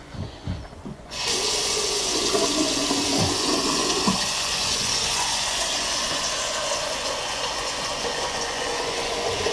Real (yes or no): no